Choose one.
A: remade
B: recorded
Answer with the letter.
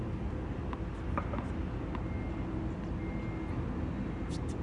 B